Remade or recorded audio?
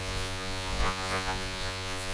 remade